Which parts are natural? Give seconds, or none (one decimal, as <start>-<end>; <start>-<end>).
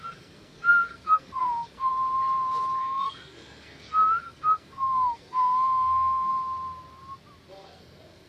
1.9-2.8; 6.3-7.5